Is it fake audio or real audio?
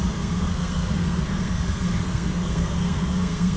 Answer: fake